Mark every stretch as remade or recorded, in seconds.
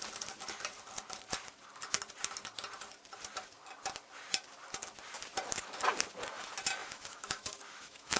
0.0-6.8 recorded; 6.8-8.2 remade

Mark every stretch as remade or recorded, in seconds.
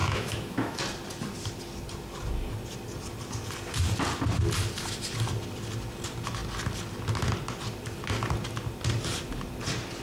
0.0-0.8 remade; 0.8-10.0 recorded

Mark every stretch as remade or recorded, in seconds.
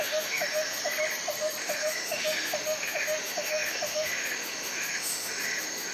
0.0-0.8 remade; 0.8-1.6 recorded; 1.6-5.9 remade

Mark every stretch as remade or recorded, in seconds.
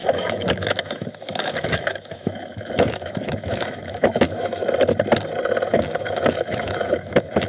0.0-4.6 remade; 4.6-5.7 recorded; 5.7-7.5 remade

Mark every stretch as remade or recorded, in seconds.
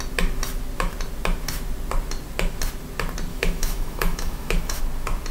0.0-3.3 recorded; 3.3-4.8 remade; 4.8-5.3 recorded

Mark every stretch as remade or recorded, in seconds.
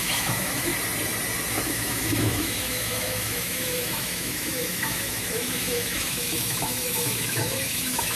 0.0-0.7 remade; 0.7-1.5 recorded; 1.5-8.2 remade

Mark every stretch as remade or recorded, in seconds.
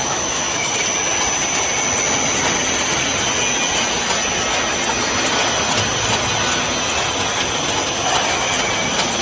0.0-0.7 remade; 0.7-9.2 recorded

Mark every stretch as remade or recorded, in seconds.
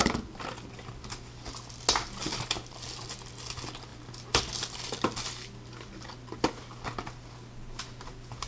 0.0-8.5 recorded